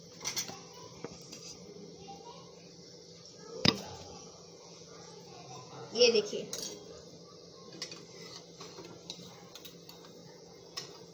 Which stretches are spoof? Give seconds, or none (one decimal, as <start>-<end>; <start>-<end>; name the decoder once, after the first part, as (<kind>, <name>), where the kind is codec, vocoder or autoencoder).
3.6-6.2 (vocoder, Vocos); 10.2-11.1